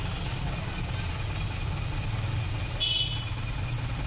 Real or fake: real